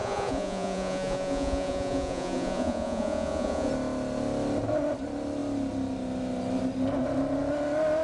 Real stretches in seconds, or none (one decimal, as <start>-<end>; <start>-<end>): 3.7-8.0